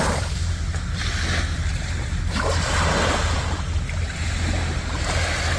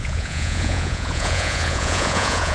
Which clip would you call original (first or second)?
first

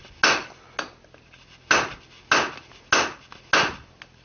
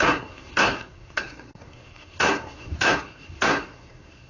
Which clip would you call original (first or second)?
first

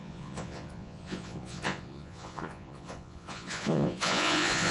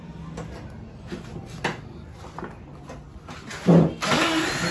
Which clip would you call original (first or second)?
second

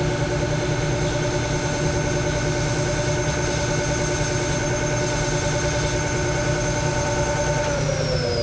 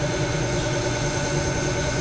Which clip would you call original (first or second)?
first